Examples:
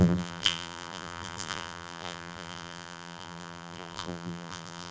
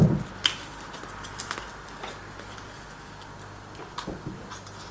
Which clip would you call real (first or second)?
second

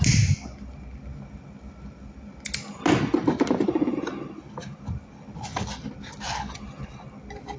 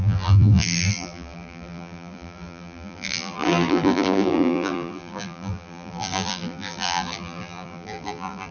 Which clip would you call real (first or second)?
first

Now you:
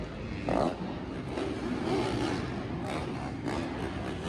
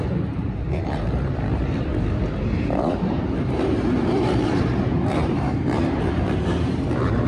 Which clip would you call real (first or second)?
first